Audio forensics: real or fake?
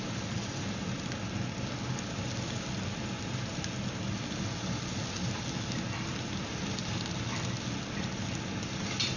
real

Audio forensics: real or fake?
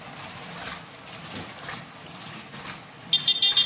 real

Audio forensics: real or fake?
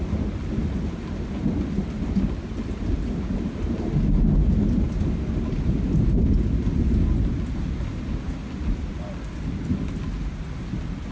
real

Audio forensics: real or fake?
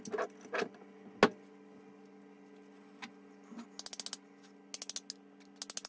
real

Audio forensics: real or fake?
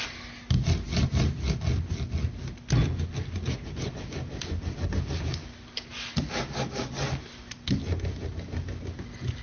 real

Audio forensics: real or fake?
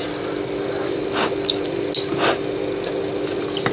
real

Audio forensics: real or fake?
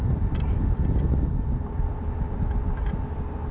real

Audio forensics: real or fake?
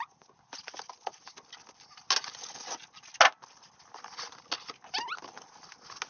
real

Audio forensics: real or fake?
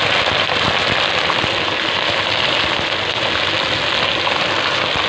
real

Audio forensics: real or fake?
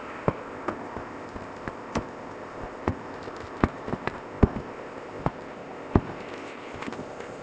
fake